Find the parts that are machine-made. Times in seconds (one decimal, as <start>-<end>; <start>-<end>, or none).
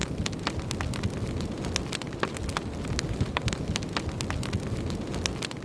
none